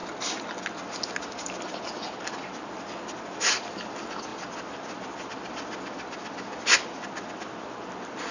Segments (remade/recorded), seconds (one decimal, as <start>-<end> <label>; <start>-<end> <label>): 0.0-8.3 recorded